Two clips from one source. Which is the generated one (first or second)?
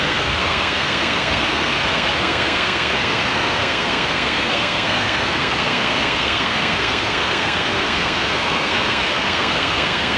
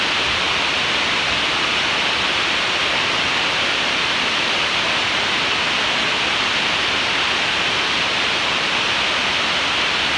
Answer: first